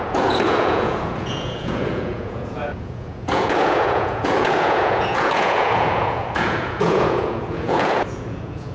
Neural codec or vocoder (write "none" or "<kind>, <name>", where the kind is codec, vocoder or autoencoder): vocoder, Vocos